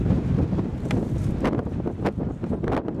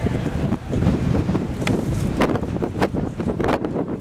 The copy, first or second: second